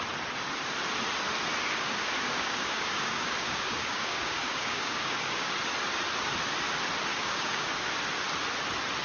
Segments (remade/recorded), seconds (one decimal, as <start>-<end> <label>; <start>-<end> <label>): 0.0-1.6 recorded; 1.6-5.5 remade; 5.5-7.1 recorded; 7.1-7.9 remade; 7.9-9.0 recorded

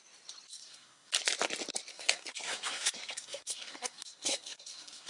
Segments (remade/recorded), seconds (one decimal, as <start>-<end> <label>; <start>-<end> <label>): 0.0-0.5 recorded; 0.5-1.1 remade; 1.1-1.9 recorded; 1.9-5.1 remade

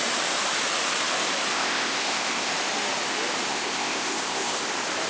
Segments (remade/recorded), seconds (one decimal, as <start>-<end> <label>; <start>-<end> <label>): 0.0-1.5 recorded; 1.5-2.5 remade; 2.5-3.5 recorded; 3.5-4.6 remade; 4.6-5.1 recorded

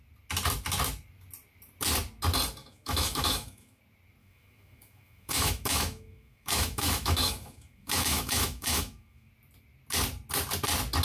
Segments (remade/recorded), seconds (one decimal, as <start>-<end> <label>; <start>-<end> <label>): 0.0-2.6 recorded; 2.6-3.8 remade; 3.8-4.2 recorded; 4.2-9.3 remade; 9.3-11.0 recorded

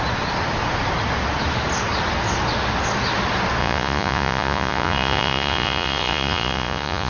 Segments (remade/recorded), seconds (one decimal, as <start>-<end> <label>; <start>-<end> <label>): 0.0-3.6 recorded; 3.6-7.1 remade